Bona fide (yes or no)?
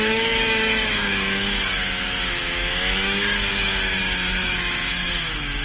no